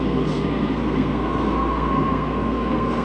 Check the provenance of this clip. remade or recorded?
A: remade